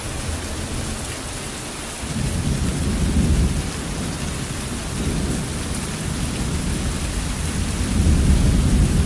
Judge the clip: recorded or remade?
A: recorded